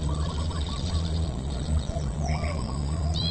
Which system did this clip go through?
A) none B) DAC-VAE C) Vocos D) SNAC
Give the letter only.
C